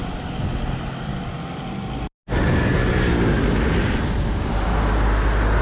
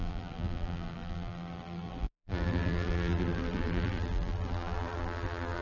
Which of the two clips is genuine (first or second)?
first